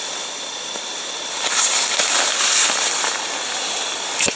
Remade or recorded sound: recorded